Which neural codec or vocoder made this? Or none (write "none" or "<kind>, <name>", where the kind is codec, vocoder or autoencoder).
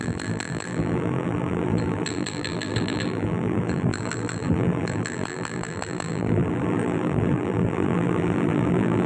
vocoder, BigVGAN v2